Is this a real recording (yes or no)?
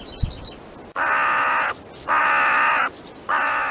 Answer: yes